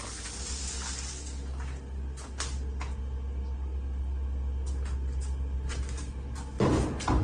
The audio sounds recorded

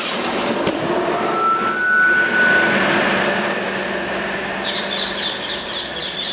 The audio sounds recorded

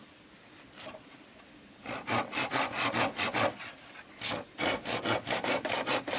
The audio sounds recorded